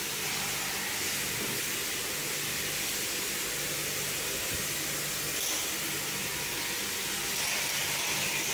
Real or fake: real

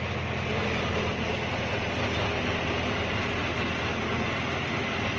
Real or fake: real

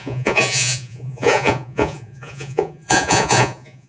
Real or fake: fake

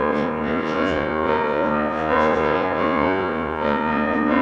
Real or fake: fake